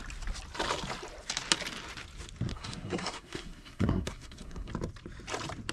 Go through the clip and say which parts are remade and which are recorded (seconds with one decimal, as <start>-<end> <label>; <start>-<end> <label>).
0.0-2.5 recorded; 2.5-4.7 remade; 4.7-5.7 recorded